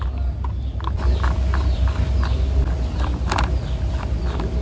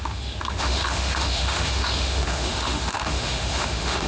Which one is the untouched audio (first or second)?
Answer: first